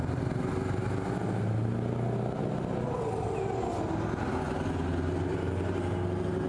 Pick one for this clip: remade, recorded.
recorded